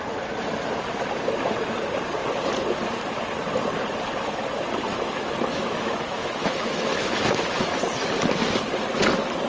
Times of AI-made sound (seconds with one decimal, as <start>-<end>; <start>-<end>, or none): 4.9-7.8